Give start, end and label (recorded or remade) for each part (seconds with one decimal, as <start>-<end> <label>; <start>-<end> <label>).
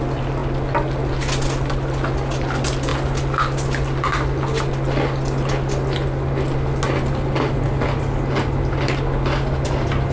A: 0.0-10.1 recorded